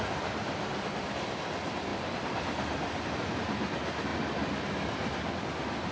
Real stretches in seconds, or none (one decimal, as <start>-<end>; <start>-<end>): 0.0-5.9